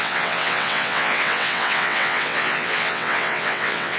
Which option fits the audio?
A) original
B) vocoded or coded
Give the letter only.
B